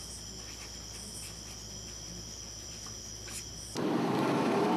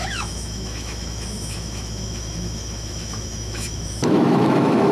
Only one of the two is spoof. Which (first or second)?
second